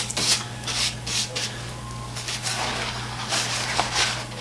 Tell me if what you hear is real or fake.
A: fake